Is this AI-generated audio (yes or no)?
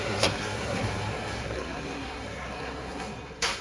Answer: yes